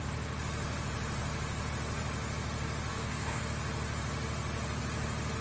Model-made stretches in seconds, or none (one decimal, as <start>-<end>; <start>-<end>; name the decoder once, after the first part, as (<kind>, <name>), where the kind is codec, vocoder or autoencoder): 2.9-3.4 (codec, DAC)

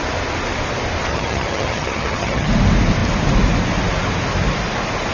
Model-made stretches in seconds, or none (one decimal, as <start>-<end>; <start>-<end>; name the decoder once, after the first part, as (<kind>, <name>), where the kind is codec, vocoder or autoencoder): 1.1-2.5 (vocoder, HiFi-GAN)